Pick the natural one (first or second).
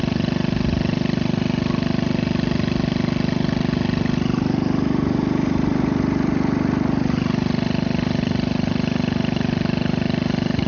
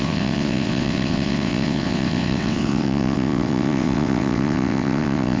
first